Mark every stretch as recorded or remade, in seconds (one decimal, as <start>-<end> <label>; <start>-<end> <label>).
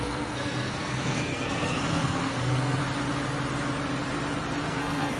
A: 0.0-2.8 remade; 2.8-4.6 recorded; 4.6-5.2 remade